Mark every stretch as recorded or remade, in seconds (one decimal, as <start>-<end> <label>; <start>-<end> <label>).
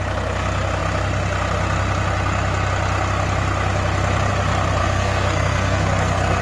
0.0-4.8 recorded; 4.8-6.4 remade